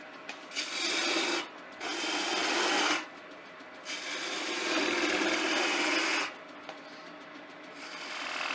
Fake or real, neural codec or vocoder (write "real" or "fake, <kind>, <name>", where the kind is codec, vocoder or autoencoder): real